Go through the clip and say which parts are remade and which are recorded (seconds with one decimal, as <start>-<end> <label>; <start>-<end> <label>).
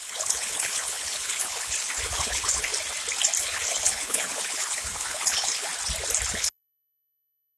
0.0-2.7 remade; 2.7-3.4 recorded; 3.4-5.7 remade; 5.7-6.3 recorded; 6.3-7.6 remade